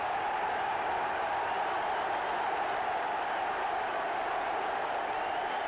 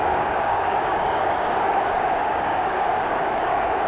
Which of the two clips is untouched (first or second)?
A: first